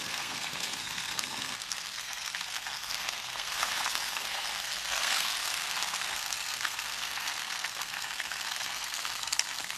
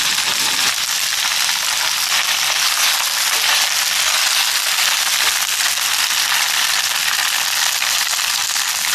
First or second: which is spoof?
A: first